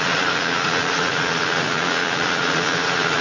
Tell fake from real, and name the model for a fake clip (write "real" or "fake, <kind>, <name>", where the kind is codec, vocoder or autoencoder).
fake, vocoder, Vocos